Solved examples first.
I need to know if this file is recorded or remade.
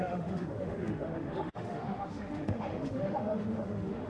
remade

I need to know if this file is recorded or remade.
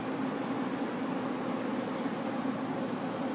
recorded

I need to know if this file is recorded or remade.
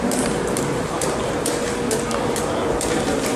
recorded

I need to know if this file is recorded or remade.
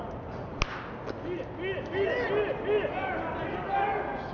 recorded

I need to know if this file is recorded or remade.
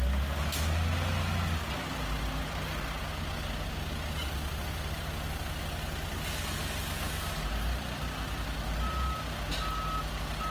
recorded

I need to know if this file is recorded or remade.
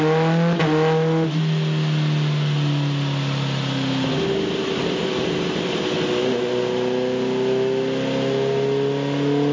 recorded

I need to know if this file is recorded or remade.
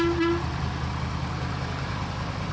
recorded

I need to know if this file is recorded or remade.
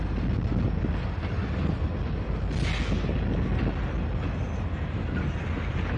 recorded